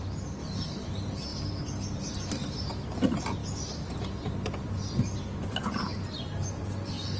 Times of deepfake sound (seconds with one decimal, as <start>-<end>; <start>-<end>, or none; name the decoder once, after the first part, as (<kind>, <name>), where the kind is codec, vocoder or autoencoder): 0.4-0.9 (vocoder, BigVGAN v2); 3.4-4.9; 5.9-6.6